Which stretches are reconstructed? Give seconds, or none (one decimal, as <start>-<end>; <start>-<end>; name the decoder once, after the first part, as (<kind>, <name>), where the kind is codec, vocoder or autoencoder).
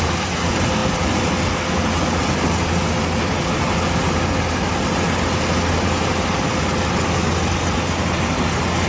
none